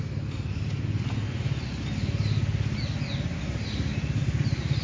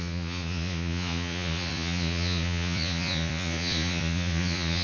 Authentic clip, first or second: first